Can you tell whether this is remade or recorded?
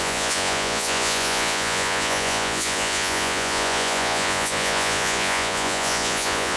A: remade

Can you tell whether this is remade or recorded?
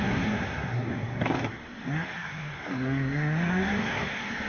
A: remade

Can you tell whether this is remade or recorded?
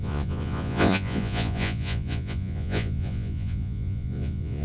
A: remade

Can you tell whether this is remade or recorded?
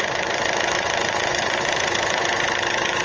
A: remade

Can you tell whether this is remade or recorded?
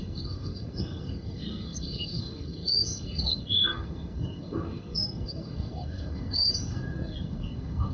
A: remade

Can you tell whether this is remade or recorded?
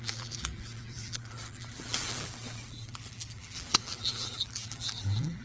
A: remade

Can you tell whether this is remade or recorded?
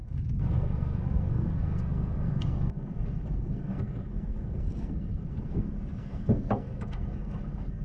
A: remade